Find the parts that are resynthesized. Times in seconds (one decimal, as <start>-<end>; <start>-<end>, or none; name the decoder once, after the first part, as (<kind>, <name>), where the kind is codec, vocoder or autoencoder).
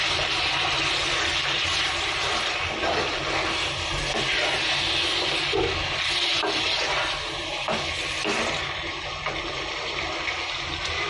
0.0-4.4 (vocoder, BigVGAN v2); 8.1-11.1